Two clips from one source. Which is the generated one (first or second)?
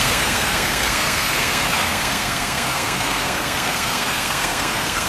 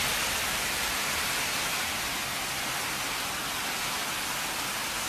first